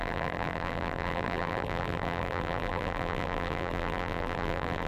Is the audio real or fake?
fake